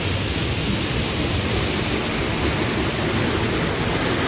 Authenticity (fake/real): real